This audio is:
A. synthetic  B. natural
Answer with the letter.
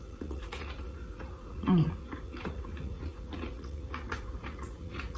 A